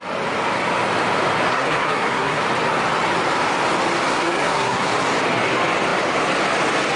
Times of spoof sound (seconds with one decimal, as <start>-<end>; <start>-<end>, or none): 1.5-2.4; 4.1-4.9